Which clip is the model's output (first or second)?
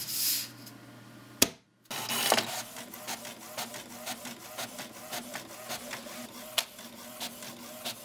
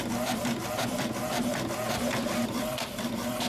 second